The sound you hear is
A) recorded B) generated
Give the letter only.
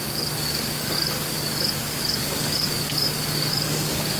B